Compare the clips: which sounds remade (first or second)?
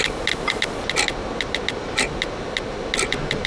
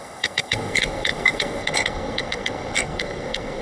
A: second